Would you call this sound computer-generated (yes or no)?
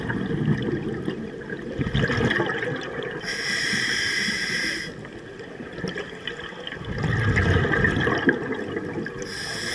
no